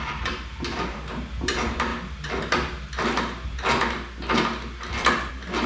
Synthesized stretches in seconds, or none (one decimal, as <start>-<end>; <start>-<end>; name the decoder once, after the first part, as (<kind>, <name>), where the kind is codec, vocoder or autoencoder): 0.0-1.9 (vocoder, BigVGAN v2); 5.3-5.7